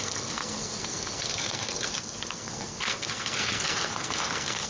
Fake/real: fake